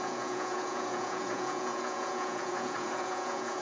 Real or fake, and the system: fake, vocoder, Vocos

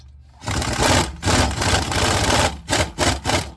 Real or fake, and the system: real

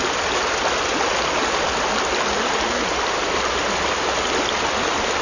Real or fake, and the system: real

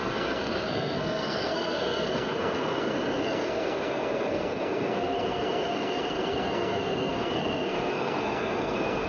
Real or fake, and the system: fake, codec, SNAC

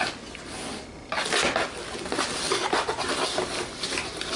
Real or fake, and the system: real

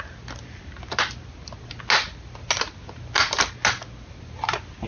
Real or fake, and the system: real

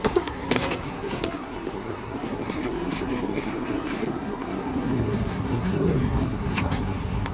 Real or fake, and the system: fake, codec, SNAC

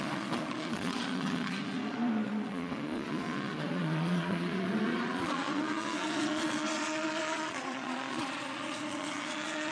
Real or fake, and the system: fake, vocoder, Vocos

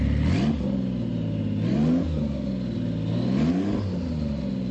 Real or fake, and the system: real